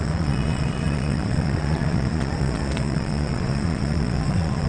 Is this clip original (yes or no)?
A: no